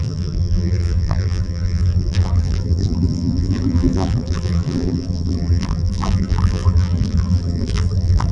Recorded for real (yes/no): no